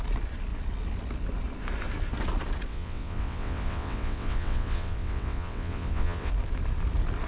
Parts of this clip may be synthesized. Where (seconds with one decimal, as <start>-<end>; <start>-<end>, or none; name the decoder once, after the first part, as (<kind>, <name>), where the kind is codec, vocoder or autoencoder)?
2.7-6.3 (vocoder, WaveNeXt)

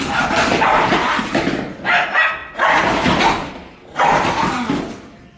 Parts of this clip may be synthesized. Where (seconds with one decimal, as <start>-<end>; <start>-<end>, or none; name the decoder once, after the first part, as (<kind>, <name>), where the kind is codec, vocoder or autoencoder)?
none

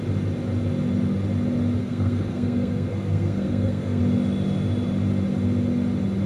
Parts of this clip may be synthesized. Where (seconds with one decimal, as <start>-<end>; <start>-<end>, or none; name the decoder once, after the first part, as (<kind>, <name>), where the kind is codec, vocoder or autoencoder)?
1.8-4.0 (codec, SNAC)

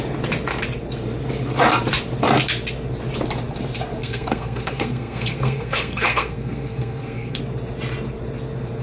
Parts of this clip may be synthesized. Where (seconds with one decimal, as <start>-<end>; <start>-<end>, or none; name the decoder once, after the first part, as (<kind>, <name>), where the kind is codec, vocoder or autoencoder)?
4.0-7.4 (codec, SNAC)

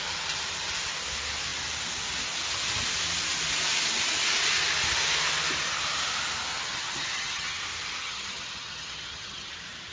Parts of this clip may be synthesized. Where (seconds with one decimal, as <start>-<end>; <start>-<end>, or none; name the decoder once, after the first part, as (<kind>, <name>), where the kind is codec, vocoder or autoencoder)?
6.5-7.6 (vocoder, HiFi-GAN); 8.0-9.5

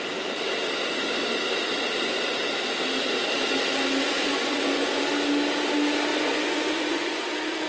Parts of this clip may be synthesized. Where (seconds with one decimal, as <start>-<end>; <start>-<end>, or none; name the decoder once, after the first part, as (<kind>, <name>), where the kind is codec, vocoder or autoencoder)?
4.3-5.0 (vocoder, Vocos); 6.1-7.2